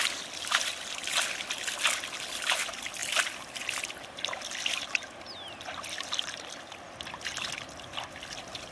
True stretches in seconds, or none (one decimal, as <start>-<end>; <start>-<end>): 0.0-8.7